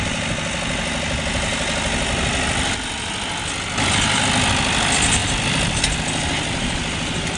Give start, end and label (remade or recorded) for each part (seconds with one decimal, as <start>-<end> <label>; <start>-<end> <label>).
0.0-5.2 recorded; 5.2-5.8 remade; 5.8-7.4 recorded

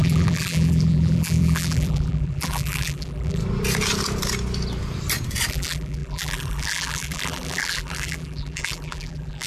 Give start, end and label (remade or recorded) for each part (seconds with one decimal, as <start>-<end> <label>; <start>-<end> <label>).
0.0-3.4 remade; 3.4-5.5 recorded; 5.5-9.5 remade